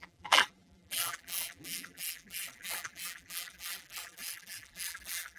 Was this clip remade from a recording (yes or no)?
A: yes